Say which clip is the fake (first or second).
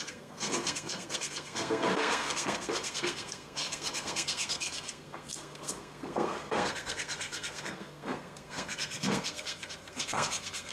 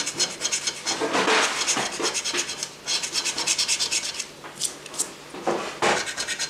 first